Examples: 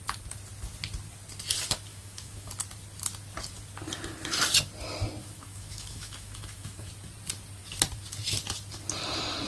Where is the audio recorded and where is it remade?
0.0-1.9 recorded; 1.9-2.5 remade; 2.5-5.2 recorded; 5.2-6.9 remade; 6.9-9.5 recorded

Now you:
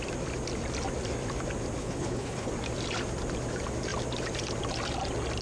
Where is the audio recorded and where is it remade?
0.0-1.8 recorded; 1.8-2.5 remade; 2.5-5.4 recorded

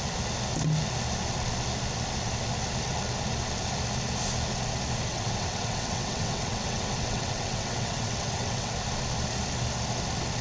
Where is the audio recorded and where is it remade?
0.0-5.1 recorded; 5.1-8.7 remade; 8.7-10.4 recorded

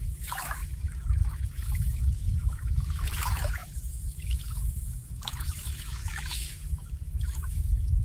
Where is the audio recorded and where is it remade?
0.0-8.0 remade